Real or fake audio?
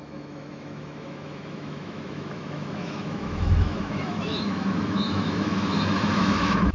fake